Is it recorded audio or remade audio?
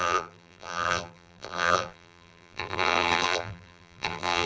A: remade